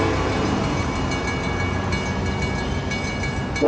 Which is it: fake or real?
real